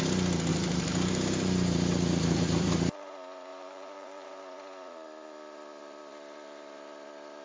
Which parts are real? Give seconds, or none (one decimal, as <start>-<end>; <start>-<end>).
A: 0.0-0.5; 3.1-3.5; 4.4-7.4